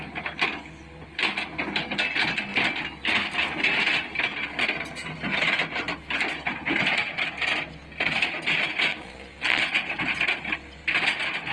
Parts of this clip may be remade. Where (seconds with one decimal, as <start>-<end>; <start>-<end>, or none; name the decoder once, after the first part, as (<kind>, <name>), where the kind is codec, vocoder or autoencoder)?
8.9-9.6 (vocoder, Vocos)